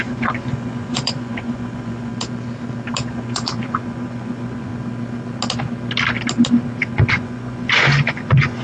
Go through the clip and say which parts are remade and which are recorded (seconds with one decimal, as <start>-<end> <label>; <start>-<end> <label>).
0.0-2.1 remade; 2.1-3.1 recorded; 3.1-4.7 remade; 4.7-6.8 recorded; 6.8-8.6 remade